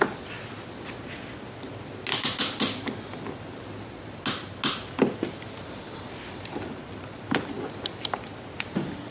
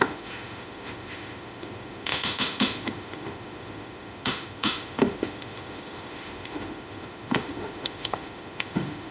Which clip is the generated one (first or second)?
second